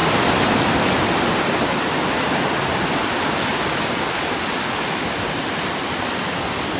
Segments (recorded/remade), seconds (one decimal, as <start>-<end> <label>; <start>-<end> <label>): 0.0-6.8 recorded